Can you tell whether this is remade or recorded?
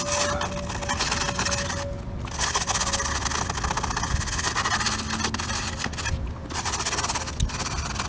recorded